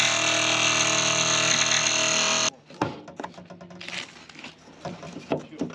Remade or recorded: recorded